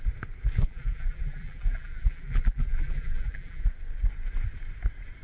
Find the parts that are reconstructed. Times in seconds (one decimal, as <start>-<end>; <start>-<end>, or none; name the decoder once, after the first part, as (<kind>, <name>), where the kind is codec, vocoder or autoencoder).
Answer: 0.6-3.7 (vocoder, BigVGAN v2)